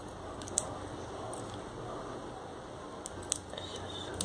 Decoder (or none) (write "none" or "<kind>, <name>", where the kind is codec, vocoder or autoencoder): none